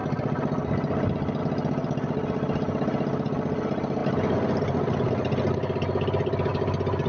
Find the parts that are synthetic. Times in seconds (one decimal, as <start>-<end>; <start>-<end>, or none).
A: none